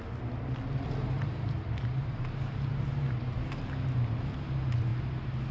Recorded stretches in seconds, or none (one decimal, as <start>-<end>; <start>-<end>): 0.0-2.9; 3.6-5.5